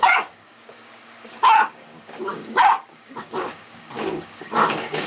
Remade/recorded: remade